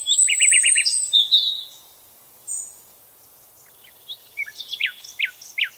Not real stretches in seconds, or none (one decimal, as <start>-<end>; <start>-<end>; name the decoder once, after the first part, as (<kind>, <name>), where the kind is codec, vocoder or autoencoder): 0.0-3.5 (vocoder, Vocos); 4.2-5.1